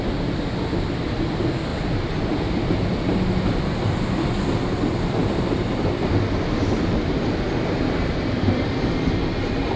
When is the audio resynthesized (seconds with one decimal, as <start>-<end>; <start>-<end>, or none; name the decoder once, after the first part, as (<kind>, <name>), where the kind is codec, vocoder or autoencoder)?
none